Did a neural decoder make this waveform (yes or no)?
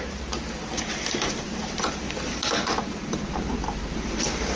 yes